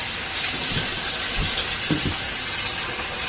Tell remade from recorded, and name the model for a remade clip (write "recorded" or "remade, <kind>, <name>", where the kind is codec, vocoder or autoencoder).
recorded